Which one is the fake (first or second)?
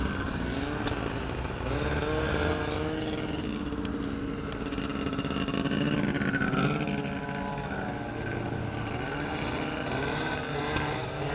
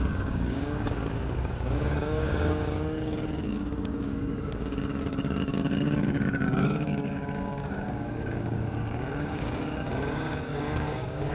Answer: second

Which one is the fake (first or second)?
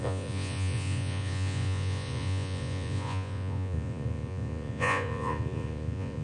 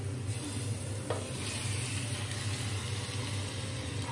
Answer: first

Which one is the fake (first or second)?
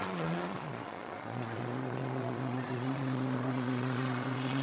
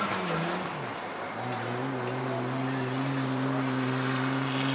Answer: first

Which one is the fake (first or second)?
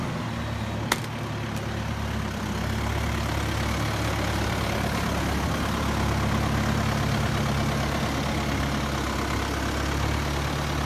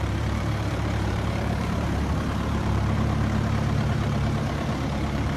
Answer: second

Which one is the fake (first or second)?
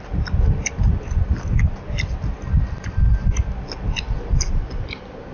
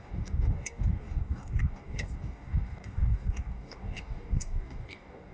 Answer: second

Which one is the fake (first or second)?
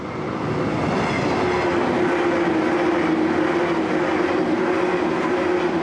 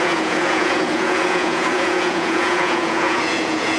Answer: second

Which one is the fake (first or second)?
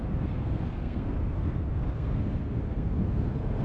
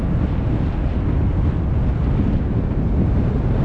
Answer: first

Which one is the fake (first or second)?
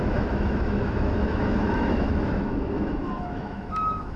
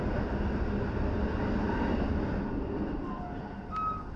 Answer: first